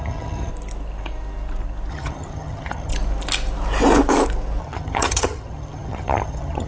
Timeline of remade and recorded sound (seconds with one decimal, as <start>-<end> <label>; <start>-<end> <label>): 0.0-0.5 remade; 0.5-1.9 recorded; 1.9-2.9 remade; 2.9-4.6 recorded; 4.6-6.7 remade